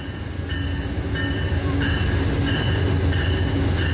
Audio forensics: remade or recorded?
recorded